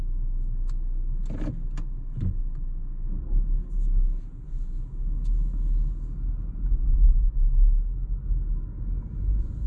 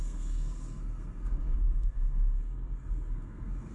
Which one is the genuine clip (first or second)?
first